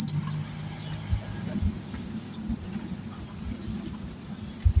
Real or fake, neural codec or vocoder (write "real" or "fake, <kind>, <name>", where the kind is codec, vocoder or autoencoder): real